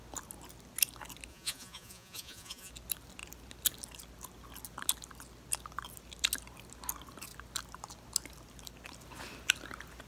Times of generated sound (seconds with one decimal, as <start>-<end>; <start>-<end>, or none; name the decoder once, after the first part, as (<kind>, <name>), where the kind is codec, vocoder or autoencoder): 1.3-2.7 (vocoder, Vocos)